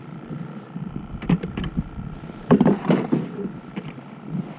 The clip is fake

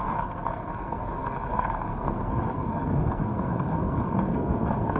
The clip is fake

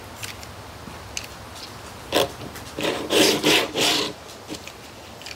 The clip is real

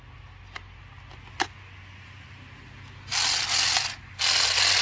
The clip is real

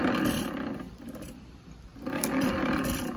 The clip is fake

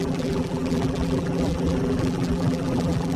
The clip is fake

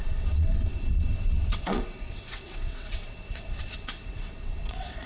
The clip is fake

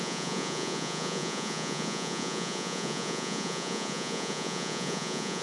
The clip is fake